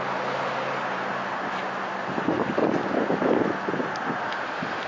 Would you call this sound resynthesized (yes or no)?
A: no